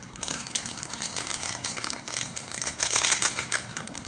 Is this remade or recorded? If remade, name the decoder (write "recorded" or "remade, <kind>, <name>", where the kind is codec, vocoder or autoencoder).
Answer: remade, codec, SNAC